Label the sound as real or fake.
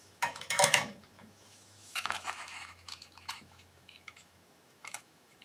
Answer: fake